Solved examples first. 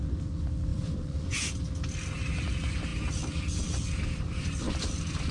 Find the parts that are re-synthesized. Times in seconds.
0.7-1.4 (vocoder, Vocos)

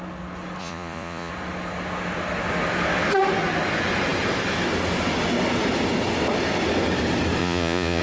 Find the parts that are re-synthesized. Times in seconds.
0.6-1.3 (vocoder, Vocos); 7.4-8.0

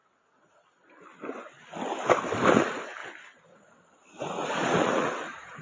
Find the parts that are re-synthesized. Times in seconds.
2.5-3.0 (vocoder, Vocos); 4.3-5.6